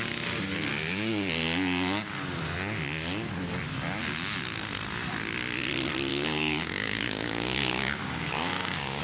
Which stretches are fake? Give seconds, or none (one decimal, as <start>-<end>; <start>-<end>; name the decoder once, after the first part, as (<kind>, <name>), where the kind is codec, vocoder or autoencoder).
6.1-9.0 (codec, DAC)